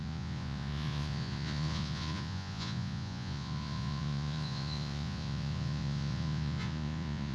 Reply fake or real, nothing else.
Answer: fake